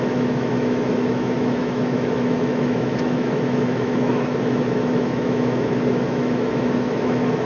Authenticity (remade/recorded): remade